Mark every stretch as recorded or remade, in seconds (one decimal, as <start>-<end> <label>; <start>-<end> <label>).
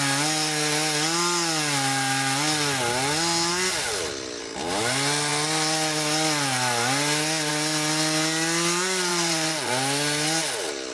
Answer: 0.0-9.1 recorded; 9.1-9.7 remade; 9.7-10.9 recorded